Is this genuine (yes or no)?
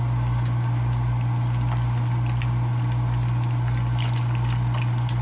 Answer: yes